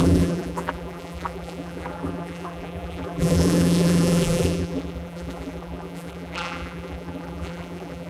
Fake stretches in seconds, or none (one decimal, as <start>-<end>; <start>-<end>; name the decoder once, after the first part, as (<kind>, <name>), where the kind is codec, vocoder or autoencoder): 0.0-8.1 (vocoder, BigVGAN v2)